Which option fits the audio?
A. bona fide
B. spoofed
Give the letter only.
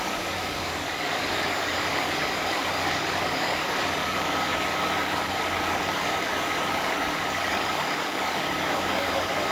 B